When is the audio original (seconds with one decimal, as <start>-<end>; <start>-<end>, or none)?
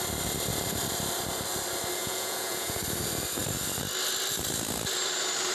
0.0-2.0; 2.8-5.5